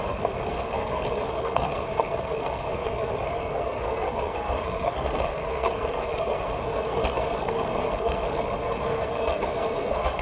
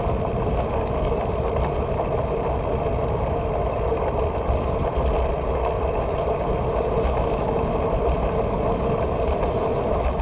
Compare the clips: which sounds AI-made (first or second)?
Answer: first